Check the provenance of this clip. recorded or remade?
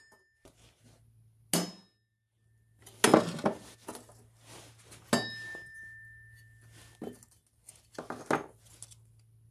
recorded